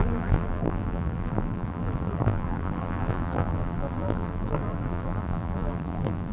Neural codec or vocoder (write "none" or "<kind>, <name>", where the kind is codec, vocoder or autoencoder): vocoder, BigVGAN v2